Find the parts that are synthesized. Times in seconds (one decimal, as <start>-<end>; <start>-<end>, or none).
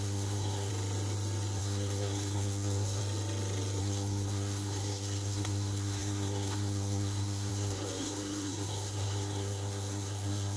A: 0.0-0.7; 1.6-3.0; 3.8-10.6